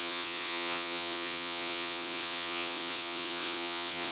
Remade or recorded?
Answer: remade